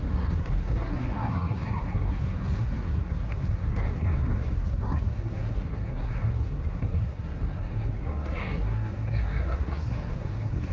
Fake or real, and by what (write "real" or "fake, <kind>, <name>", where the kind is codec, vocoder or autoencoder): fake, codec, SNAC